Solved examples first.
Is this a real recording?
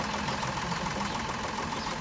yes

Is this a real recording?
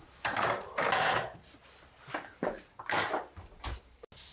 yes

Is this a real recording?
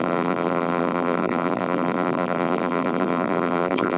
no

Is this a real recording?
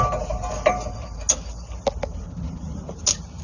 yes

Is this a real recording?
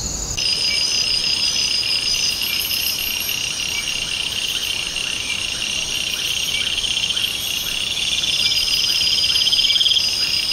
yes